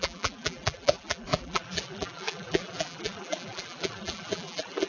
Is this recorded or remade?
remade